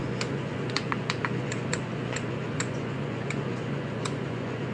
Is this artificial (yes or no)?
yes